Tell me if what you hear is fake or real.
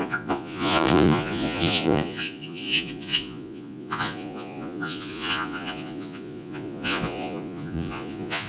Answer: fake